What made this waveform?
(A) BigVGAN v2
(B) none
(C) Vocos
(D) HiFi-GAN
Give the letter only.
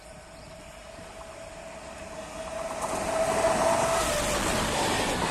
B